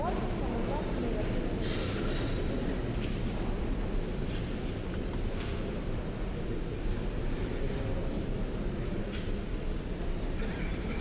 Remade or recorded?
recorded